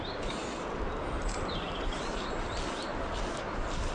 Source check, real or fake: fake